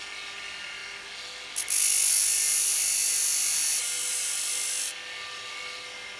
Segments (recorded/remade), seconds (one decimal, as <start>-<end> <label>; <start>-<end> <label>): 0.0-6.2 recorded